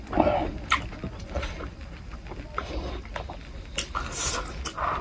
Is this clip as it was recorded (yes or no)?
yes